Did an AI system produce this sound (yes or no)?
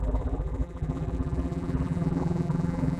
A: yes